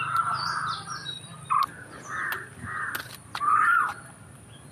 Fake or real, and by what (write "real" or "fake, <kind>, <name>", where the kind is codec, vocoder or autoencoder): real